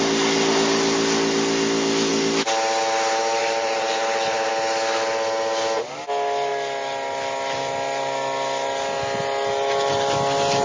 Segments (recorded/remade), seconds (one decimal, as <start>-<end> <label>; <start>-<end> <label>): 0.0-3.4 recorded; 3.4-4.5 remade; 4.5-10.6 recorded